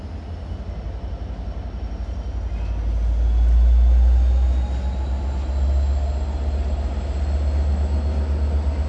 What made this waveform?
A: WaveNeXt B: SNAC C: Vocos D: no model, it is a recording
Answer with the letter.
D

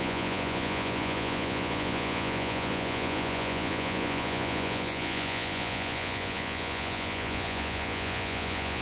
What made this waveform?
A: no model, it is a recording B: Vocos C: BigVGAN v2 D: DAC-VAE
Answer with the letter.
B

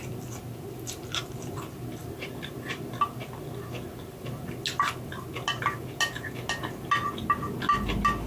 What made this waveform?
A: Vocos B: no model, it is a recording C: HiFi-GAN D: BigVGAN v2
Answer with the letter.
B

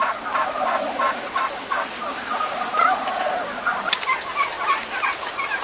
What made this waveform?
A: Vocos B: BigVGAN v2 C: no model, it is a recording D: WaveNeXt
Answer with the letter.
C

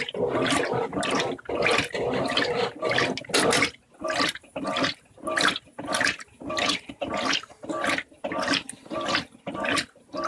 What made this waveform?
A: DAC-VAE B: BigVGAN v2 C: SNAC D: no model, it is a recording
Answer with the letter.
D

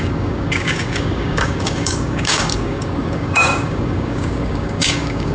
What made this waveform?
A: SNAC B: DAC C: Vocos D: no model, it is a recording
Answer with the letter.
B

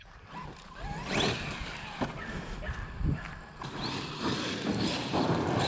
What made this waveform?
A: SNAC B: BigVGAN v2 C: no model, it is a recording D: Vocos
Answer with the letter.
C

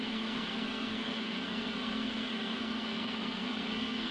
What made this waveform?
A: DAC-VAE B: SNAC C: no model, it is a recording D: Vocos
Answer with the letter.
B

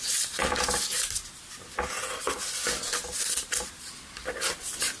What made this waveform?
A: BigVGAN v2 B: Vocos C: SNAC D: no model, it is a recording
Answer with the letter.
D